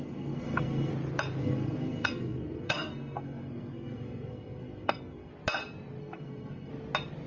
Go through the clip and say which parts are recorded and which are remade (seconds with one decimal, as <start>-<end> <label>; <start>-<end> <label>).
0.0-0.9 remade; 0.9-1.4 recorded; 1.4-5.3 remade; 5.3-6.0 recorded; 6.0-6.7 remade; 6.7-7.3 recorded